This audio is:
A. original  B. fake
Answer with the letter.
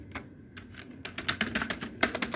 A